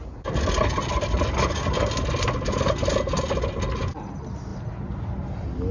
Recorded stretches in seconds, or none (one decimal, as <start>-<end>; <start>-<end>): 0.0-5.7